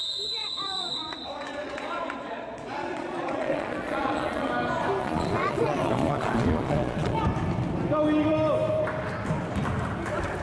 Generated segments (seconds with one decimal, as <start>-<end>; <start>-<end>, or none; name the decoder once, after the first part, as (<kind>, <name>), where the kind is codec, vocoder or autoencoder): 0.4-4.5 (vocoder, Vocos); 5.0-7.2